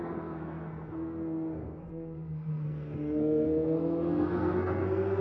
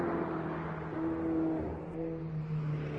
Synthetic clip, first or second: first